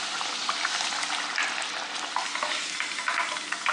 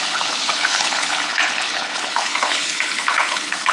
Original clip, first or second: first